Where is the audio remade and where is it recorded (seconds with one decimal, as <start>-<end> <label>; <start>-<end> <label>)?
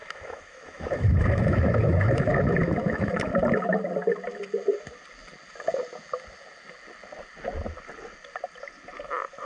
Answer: 0.0-3.4 remade; 3.4-9.5 recorded